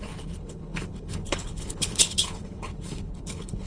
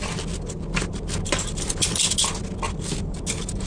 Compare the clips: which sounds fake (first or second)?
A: first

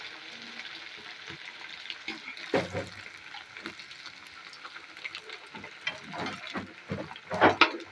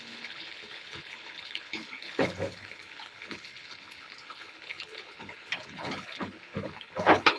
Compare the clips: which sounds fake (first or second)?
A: second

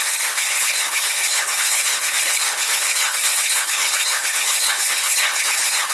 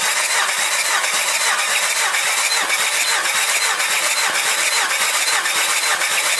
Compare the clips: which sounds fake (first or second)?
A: first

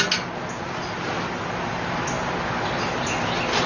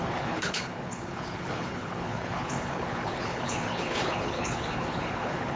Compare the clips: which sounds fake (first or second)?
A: second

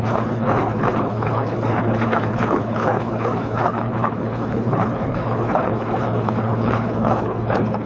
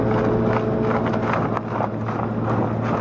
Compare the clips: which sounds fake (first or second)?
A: first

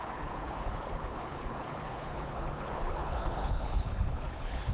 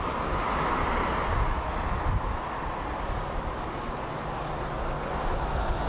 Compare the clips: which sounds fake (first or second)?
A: first